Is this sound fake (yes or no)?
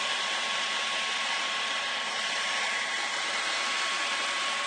yes